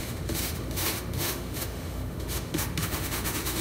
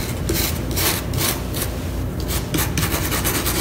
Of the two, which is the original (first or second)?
second